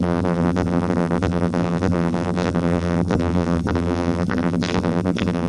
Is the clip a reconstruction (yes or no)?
yes